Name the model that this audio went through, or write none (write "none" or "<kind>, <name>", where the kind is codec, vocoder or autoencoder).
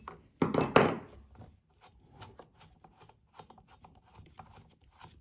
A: none